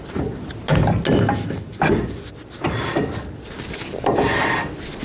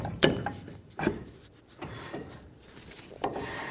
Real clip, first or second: first